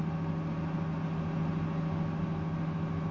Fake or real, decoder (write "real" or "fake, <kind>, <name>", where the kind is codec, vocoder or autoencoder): real